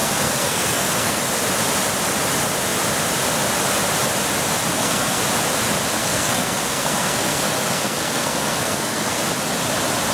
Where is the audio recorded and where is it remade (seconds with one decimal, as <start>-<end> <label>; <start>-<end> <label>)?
0.0-1.2 remade; 1.2-4.7 recorded; 4.7-5.2 remade; 5.2-6.0 recorded; 6.0-9.2 remade; 9.2-10.1 recorded